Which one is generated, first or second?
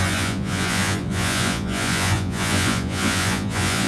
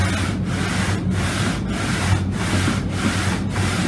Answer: first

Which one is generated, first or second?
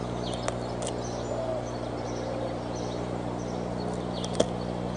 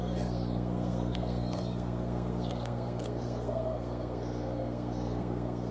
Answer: second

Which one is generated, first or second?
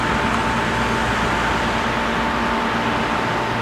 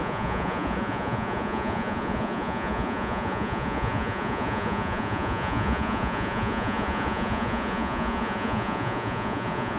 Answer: second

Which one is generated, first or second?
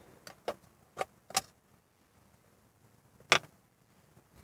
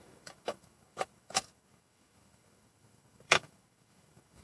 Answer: second